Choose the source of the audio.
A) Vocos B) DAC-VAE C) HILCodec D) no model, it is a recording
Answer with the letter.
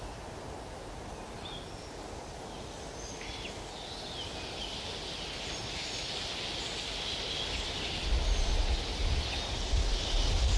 D